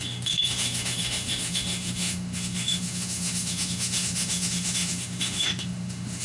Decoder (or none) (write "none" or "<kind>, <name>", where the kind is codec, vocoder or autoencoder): autoencoder, DAC-VAE